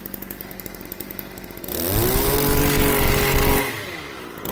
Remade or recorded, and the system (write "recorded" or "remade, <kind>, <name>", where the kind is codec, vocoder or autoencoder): recorded